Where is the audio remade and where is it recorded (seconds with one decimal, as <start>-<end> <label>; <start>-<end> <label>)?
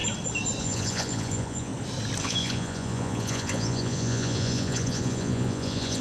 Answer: 0.0-0.6 recorded; 0.6-1.7 remade; 1.7-2.2 recorded; 2.2-6.0 remade